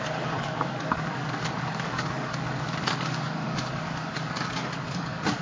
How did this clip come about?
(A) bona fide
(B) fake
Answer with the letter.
B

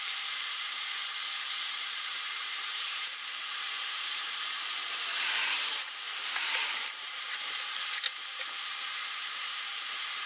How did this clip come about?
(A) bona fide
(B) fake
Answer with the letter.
B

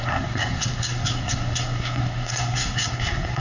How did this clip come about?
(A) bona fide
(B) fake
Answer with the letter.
B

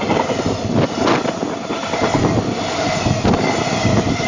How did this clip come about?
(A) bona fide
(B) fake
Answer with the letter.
A